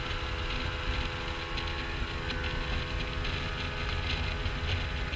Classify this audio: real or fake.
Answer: real